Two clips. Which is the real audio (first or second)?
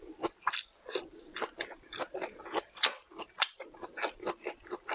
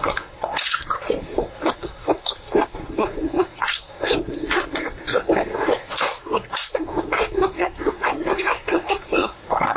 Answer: first